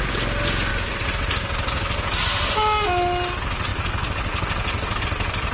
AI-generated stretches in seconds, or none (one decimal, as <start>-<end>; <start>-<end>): 3.7-5.0

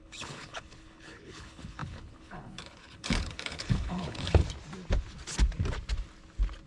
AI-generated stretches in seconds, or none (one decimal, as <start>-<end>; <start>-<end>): 0.0-4.4

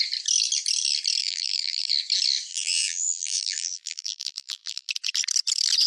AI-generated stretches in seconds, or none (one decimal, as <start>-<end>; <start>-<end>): 1.2-1.9; 2.5-4.9

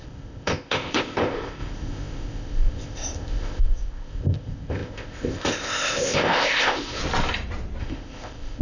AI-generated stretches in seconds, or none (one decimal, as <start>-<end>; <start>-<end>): 0.0-7.0; 7.8-8.6

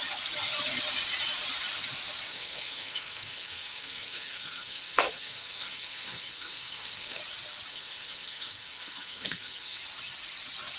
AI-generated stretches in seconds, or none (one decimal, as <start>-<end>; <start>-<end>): 2.3-7.2; 7.7-9.8